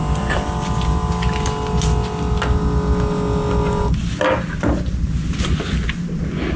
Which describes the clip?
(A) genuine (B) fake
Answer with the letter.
A